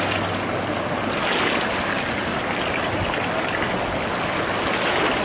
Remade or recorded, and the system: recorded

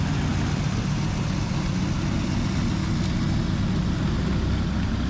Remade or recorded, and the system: recorded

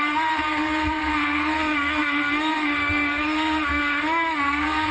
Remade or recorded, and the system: remade, codec, SNAC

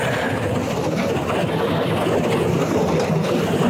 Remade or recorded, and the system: recorded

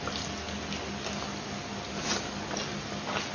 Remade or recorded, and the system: recorded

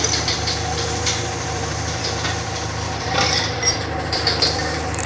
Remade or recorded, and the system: remade, vocoder, BigVGAN v2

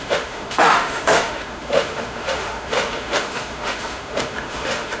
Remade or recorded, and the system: remade, autoencoder, DAC-VAE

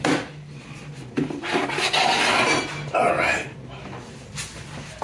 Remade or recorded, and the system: recorded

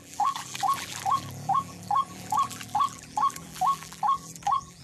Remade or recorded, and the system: remade, vocoder, BigVGAN v2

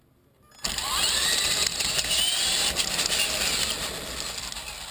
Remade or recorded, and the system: recorded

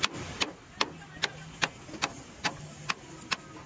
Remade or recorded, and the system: recorded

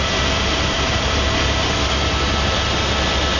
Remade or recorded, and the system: recorded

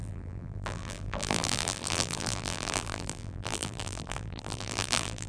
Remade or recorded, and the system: remade, vocoder, BigVGAN v2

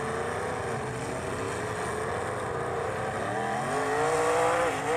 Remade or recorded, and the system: recorded